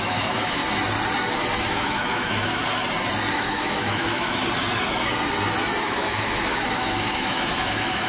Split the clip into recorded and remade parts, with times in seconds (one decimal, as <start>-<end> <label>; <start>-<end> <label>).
0.0-0.6 remade; 0.6-1.7 recorded; 1.7-2.6 remade; 2.6-3.3 recorded; 3.3-4.4 remade; 4.4-5.8 recorded; 5.8-8.1 remade